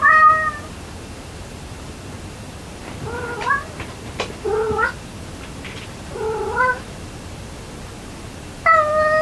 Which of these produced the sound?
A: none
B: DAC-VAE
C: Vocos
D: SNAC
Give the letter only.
A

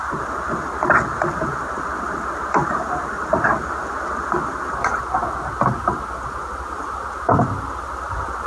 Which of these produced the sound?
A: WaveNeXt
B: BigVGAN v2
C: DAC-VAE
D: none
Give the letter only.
D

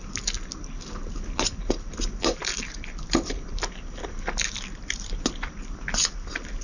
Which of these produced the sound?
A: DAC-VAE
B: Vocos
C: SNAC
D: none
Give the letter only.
D